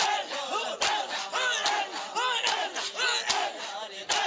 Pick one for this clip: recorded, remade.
recorded